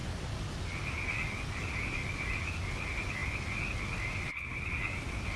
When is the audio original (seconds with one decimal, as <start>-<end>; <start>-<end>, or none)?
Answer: 0.0-5.4